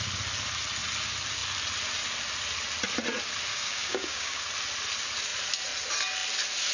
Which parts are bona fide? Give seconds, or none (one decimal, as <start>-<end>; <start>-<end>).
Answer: 0.0-3.5; 4.4-6.7